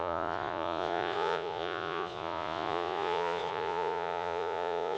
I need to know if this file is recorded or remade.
remade